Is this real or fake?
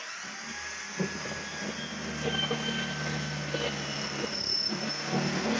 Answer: real